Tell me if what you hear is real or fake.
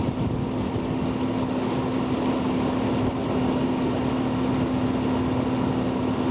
real